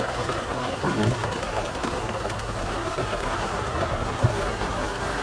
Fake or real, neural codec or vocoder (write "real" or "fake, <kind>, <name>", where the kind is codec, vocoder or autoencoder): fake, codec, SNAC